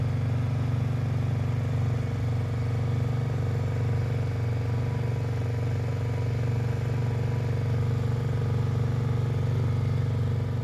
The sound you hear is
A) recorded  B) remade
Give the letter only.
A